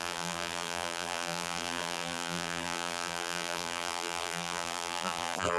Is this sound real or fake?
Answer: fake